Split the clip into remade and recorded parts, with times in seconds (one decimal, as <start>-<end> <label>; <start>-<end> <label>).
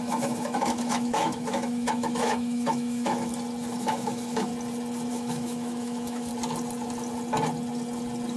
0.0-3.3 remade; 3.3-3.8 recorded; 3.8-4.5 remade; 4.5-5.1 recorded; 5.1-6.3 remade; 6.3-8.4 recorded